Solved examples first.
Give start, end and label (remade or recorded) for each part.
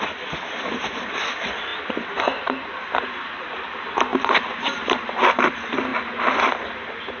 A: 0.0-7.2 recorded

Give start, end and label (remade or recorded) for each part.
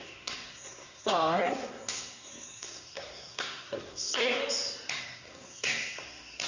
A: 0.0-4.4 remade; 4.4-4.9 recorded; 4.9-6.5 remade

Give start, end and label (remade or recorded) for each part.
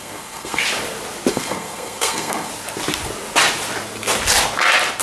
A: 0.0-0.6 remade; 0.6-1.3 recorded; 1.3-2.5 remade; 2.5-5.0 recorded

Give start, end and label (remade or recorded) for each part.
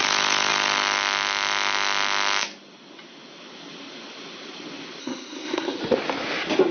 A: 0.0-5.0 recorded; 5.0-5.8 remade; 5.8-6.7 recorded